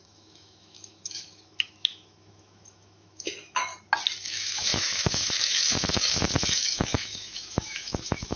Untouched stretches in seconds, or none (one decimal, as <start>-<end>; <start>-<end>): 3.7-4.2